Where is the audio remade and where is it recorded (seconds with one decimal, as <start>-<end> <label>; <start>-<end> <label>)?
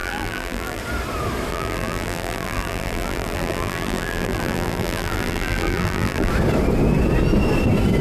0.0-0.8 remade; 0.8-1.5 recorded; 1.5-6.3 remade; 6.3-8.0 recorded